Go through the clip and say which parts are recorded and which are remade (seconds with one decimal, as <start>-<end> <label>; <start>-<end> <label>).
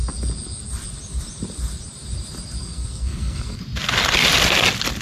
0.0-2.6 recorded; 2.6-3.6 remade; 3.6-5.0 recorded